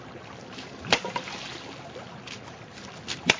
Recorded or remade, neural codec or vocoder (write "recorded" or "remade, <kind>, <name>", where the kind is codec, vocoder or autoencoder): recorded